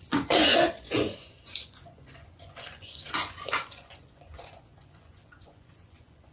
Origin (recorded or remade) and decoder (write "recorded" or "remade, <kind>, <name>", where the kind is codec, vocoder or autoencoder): remade, vocoder, Vocos